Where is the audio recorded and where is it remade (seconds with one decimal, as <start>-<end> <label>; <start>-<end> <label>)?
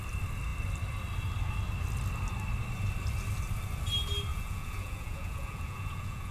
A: 0.0-4.3 recorded; 4.3-6.3 remade